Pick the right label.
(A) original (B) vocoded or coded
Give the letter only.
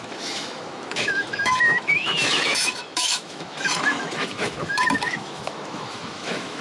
B